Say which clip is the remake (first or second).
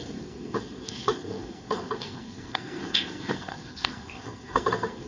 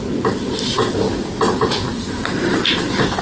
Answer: first